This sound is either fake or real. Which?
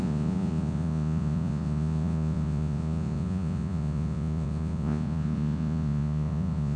fake